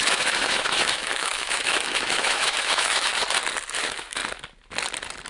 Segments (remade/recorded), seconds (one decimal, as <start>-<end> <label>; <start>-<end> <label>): 0.0-3.1 remade; 3.1-3.8 recorded; 3.8-4.2 remade; 4.2-5.3 recorded